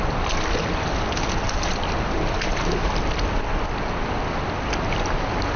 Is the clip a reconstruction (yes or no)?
no